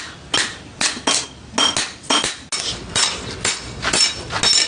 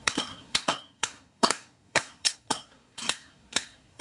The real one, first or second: first